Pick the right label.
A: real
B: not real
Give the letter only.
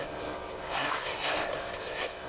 B